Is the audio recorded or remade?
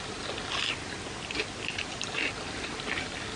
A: recorded